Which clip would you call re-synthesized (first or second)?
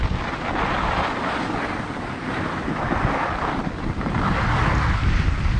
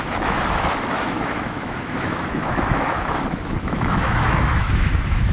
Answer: second